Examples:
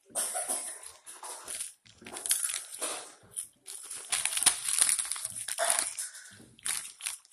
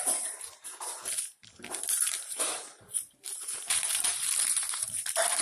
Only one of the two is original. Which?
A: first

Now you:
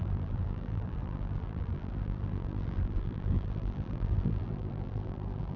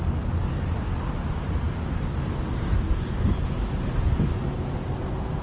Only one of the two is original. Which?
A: second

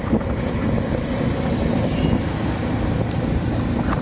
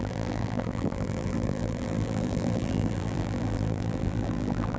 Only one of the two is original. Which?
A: first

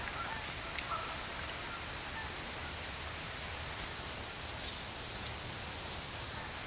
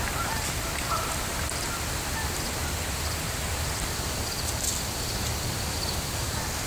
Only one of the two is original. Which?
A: first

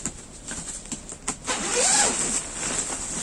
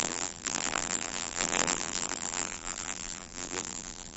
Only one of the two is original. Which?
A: first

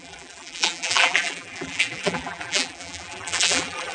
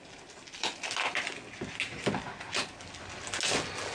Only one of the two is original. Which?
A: second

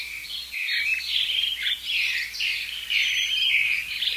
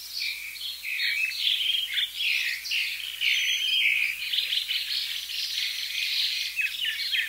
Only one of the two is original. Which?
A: second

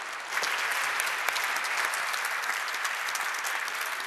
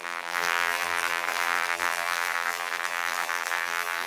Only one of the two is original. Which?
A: first